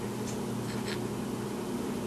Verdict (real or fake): real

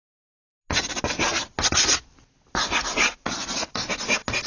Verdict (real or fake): real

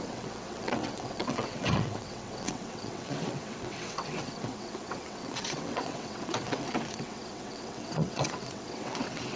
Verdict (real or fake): fake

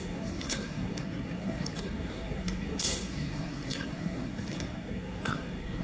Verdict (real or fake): fake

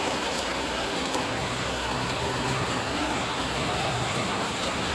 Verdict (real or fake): fake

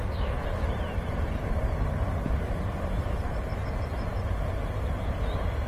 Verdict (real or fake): real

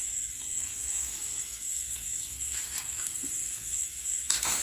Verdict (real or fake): fake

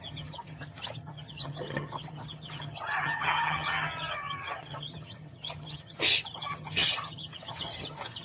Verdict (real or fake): fake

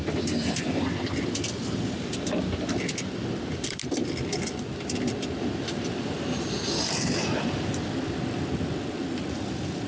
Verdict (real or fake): real